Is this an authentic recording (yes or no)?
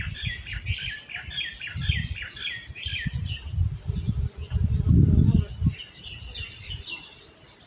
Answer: yes